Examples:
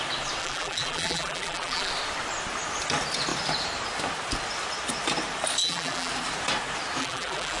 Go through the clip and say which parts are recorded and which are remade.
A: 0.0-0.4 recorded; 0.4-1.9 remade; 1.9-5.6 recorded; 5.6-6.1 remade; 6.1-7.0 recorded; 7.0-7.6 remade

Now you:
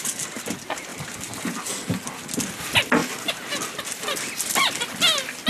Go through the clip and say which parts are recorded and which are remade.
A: 0.0-0.9 recorded; 0.9-1.6 remade; 1.6-5.5 recorded